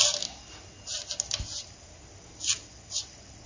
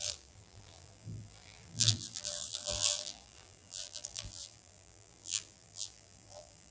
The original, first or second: first